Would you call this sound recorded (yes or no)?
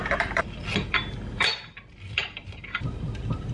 no